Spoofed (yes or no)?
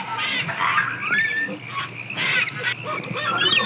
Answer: no